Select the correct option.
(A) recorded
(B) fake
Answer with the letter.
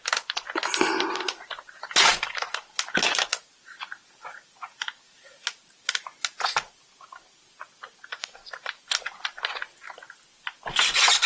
A